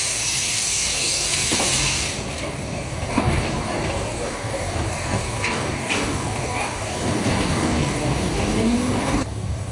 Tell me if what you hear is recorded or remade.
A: remade